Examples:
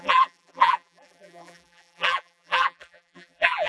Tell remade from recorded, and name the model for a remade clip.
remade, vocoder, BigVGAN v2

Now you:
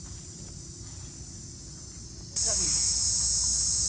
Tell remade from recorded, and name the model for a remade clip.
recorded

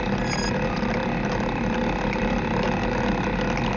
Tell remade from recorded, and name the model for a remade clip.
recorded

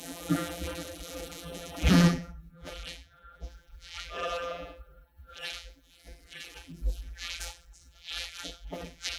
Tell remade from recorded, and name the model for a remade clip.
remade, vocoder, BigVGAN v2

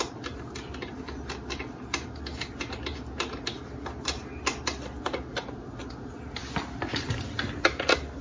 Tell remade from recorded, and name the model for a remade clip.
recorded